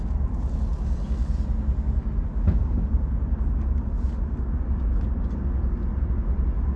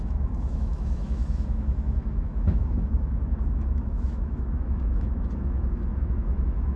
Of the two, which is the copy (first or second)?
second